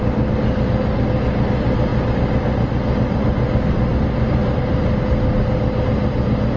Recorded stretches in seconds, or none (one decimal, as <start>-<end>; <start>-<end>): 0.0-6.6